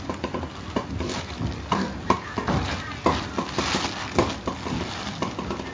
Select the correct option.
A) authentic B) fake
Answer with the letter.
A